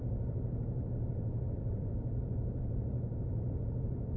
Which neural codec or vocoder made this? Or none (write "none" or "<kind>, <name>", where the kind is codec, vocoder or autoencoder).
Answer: vocoder, BigVGAN v2